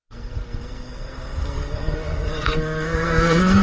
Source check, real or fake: fake